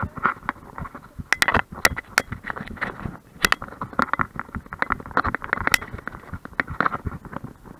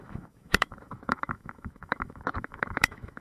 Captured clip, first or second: first